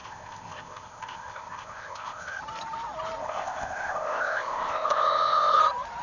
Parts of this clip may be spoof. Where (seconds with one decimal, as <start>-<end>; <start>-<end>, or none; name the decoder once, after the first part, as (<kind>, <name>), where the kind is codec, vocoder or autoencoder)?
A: 0.0-2.4 (codec, ZipCodec); 3.2-5.6